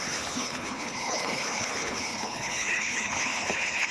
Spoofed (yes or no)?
yes